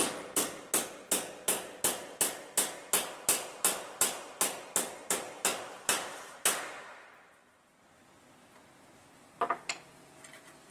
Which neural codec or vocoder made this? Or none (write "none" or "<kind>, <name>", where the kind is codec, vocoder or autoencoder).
none